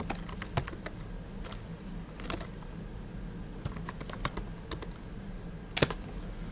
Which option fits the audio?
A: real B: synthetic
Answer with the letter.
A